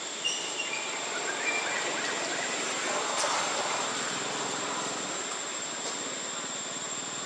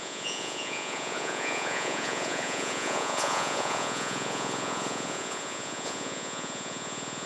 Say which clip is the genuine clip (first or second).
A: first